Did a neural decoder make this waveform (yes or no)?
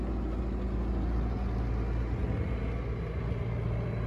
no